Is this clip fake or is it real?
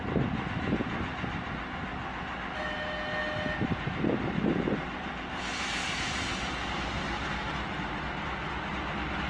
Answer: real